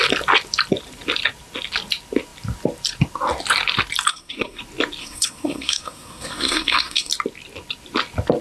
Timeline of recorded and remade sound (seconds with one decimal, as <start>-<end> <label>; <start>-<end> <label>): 0.0-4.1 recorded; 4.1-4.6 remade; 4.6-5.0 recorded; 5.0-7.1 remade; 7.1-8.4 recorded